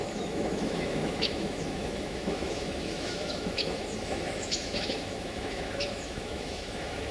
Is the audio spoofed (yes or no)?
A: yes